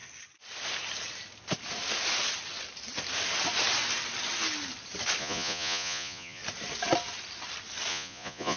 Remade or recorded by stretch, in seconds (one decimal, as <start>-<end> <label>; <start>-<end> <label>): 0.0-5.2 recorded; 5.2-6.4 remade; 6.4-7.9 recorded; 7.9-8.6 remade